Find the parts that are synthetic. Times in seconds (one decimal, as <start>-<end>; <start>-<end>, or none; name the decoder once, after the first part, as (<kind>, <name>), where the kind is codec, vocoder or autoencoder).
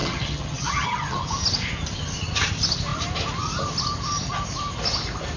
0.0-1.3 (vocoder, HiFi-GAN)